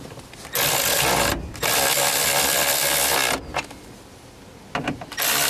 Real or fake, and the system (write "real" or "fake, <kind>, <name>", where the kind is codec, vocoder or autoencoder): real